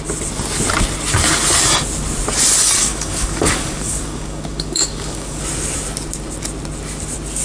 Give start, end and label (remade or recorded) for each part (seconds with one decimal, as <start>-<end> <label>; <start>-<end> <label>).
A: 0.0-2.8 recorded; 2.8-5.4 remade; 5.4-7.4 recorded